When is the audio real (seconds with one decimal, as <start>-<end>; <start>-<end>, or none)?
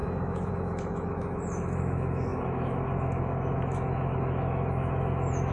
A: none